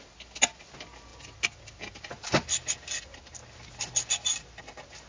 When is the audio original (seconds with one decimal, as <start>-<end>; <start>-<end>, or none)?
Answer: 0.0-5.1